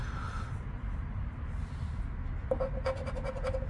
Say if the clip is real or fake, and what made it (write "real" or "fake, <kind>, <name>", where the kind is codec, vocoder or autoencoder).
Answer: real